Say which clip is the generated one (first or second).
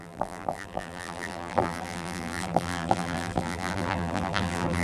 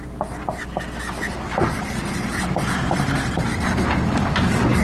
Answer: first